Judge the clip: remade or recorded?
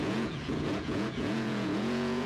remade